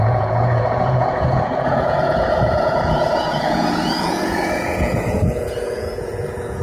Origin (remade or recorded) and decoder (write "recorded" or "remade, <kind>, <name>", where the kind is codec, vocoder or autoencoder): remade, vocoder, Vocos